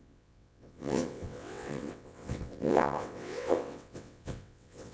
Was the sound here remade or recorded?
remade